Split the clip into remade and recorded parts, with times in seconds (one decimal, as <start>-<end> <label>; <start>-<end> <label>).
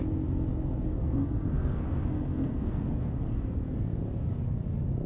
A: 0.0-0.9 recorded; 0.9-4.0 remade; 4.0-5.1 recorded